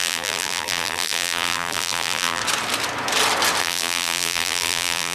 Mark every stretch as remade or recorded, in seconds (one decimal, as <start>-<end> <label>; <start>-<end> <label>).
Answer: 0.0-2.4 remade; 2.4-3.6 recorded; 3.6-5.1 remade